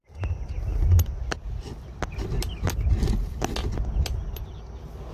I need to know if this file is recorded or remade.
recorded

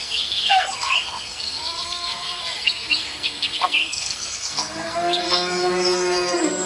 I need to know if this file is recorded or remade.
remade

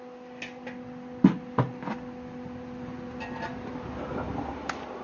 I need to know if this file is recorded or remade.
recorded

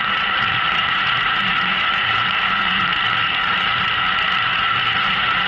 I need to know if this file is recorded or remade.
remade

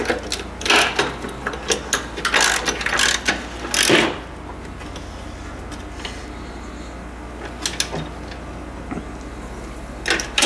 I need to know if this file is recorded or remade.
recorded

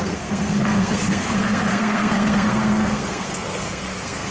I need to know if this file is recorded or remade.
remade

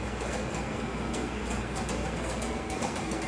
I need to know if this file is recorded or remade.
remade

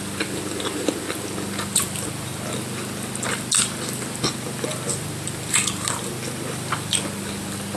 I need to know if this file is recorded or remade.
recorded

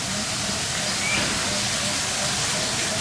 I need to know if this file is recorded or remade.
remade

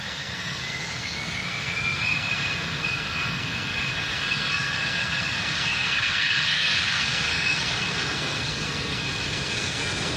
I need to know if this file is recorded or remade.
remade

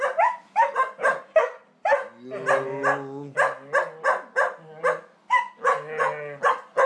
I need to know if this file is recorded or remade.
recorded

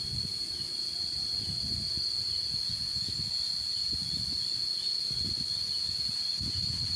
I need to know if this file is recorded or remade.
recorded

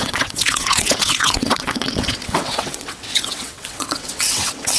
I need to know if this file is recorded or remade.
remade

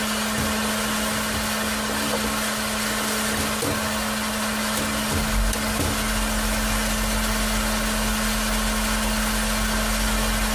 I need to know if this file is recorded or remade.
recorded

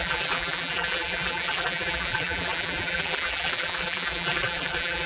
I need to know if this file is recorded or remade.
remade